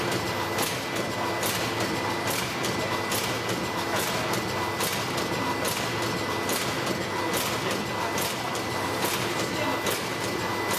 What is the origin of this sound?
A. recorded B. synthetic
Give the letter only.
A